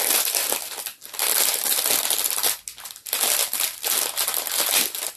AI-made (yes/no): no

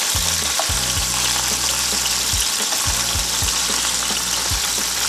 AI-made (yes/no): no